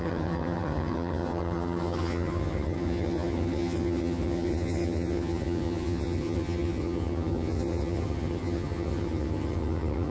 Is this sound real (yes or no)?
no